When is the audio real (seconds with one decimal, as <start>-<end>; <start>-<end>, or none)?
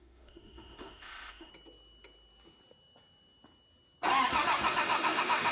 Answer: 1.5-4.8